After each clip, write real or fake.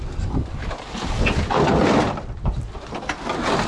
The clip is real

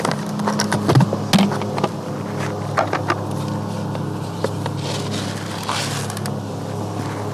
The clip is real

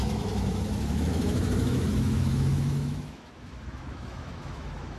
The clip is fake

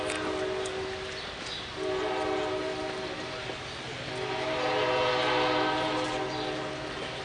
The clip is real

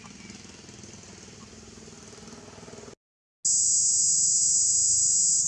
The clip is real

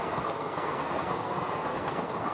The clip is fake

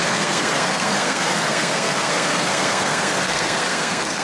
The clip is fake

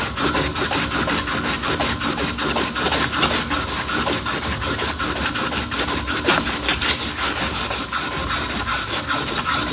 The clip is real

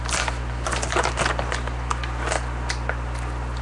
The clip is fake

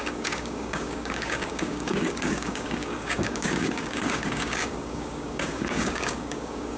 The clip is fake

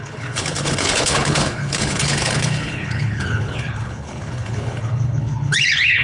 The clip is fake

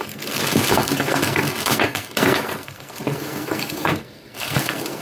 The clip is fake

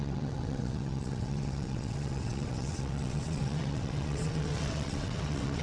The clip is fake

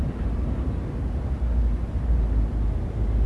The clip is real